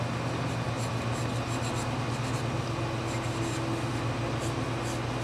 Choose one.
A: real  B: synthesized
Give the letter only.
A